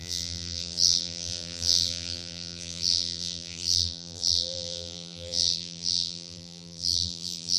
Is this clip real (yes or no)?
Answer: no